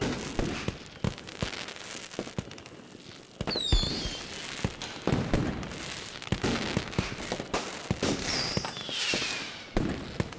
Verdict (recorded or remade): recorded